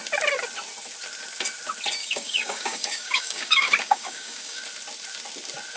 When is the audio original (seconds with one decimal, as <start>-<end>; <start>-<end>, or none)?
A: 0.0-2.0; 4.6-5.8